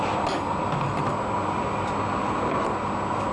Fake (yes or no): no